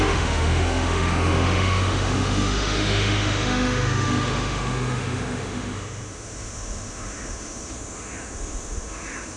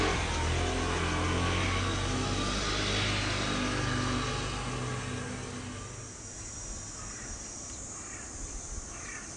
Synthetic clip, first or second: first